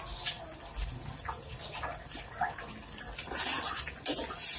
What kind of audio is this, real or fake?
real